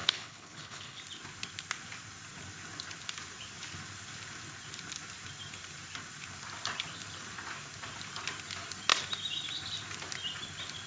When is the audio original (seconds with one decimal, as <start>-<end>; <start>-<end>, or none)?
1.0-10.9